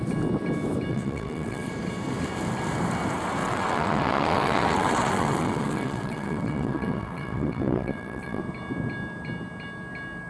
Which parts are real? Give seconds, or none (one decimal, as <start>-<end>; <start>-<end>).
0.0-0.9; 1.7-3.4; 8.4-10.3